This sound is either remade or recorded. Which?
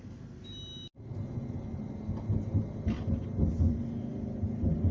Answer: recorded